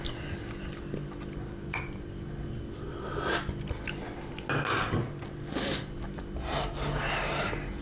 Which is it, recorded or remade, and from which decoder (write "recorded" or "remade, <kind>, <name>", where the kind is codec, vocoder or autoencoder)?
recorded